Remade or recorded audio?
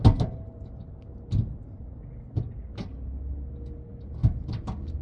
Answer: recorded